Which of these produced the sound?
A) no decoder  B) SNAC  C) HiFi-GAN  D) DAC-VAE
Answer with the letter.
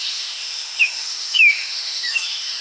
D